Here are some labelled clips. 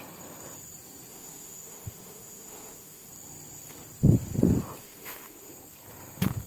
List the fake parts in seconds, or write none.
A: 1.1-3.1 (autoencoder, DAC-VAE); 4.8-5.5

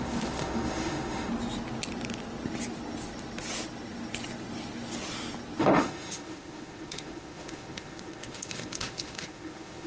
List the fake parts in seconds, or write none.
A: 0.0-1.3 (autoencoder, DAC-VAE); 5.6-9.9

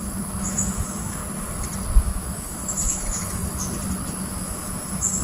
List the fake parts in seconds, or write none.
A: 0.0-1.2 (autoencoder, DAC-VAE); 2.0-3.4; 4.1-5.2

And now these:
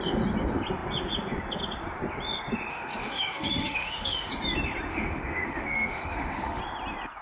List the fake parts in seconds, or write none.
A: 2.7-4.3 (autoencoder, DAC-VAE); 4.9-6.6